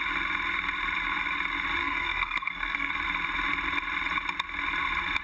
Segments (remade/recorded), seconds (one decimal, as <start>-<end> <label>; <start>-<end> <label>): 0.0-1.8 recorded; 1.8-2.9 remade; 2.9-5.2 recorded

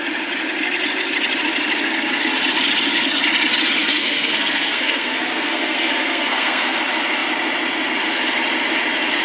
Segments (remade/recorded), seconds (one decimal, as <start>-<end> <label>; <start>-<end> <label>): 0.0-3.8 recorded; 3.8-6.8 remade; 6.8-9.2 recorded

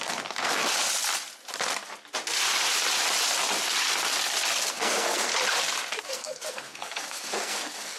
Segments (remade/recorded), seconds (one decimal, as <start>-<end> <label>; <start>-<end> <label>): 0.0-0.6 remade; 0.6-4.7 recorded; 4.7-5.3 remade; 5.3-6.0 recorded; 6.0-8.0 remade

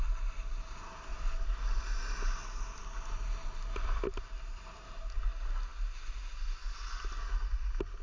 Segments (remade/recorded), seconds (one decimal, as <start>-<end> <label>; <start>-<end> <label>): 0.0-8.0 recorded

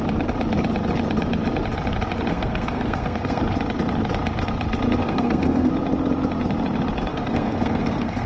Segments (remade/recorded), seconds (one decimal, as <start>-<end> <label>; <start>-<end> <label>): 0.0-2.3 recorded; 2.3-3.4 remade; 3.4-5.0 recorded; 5.0-5.7 remade; 5.7-7.1 recorded; 7.1-8.3 remade

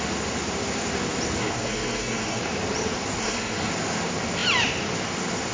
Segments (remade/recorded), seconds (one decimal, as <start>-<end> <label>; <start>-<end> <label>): 0.0-1.4 recorded; 1.4-2.4 remade; 2.4-3.2 recorded; 3.2-3.7 remade; 3.7-5.5 recorded